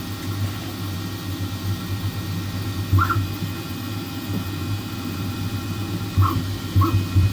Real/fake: real